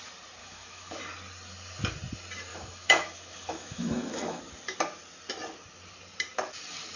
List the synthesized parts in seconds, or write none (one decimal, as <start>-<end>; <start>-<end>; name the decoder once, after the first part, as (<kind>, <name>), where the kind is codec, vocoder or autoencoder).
0.4-1.0 (autoencoder, DAC-VAE); 2.5-4.4